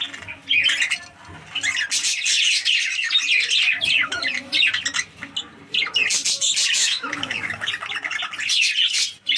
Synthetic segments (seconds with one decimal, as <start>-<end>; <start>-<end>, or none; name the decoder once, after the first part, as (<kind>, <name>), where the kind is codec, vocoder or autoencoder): 6.8-7.7 (autoencoder, DAC-VAE)